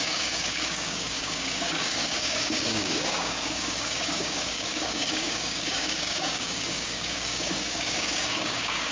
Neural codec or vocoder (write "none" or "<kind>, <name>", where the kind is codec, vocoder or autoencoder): codec, DAC